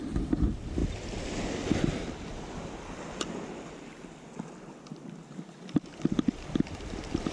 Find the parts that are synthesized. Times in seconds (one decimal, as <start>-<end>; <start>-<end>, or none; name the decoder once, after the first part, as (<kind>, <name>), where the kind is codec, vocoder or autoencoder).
none